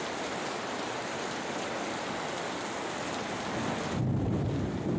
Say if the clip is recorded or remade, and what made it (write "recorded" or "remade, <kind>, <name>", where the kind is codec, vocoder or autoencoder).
recorded